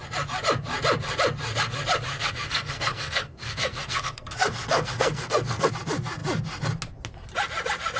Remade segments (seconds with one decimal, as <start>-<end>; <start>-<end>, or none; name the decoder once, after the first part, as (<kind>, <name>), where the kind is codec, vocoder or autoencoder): 2.1-5.7 (codec, SNAC)